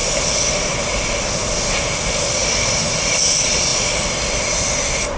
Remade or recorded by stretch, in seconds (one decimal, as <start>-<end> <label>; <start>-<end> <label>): 0.0-1.7 recorded; 1.7-2.4 remade; 2.4-3.1 recorded; 3.1-3.7 remade; 3.7-4.4 recorded; 4.4-5.2 remade